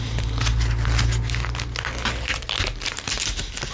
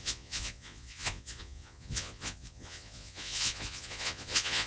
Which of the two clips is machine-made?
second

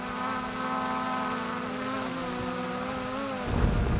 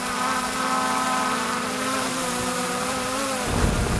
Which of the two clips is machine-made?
second